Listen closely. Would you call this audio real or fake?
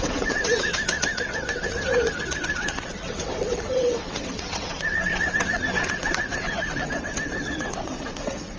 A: fake